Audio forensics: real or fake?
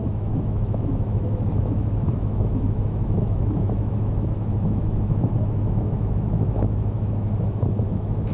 fake